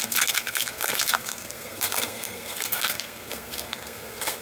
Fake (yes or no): yes